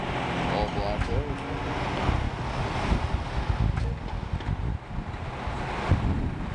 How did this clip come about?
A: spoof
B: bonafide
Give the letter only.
B